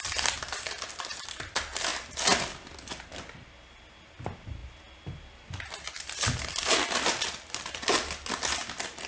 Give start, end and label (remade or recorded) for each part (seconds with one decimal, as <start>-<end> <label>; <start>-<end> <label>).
0.0-1.9 recorded; 1.9-2.9 remade; 2.9-6.6 recorded; 6.6-8.4 remade; 8.4-9.1 recorded